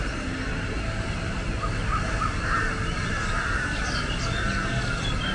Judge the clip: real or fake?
real